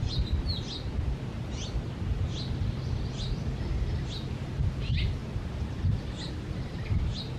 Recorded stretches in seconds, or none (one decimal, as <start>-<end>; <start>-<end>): 0.0-2.1; 4.6-7.4